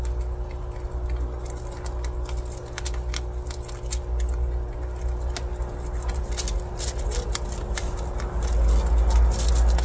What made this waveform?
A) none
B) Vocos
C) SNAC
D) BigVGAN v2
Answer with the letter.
A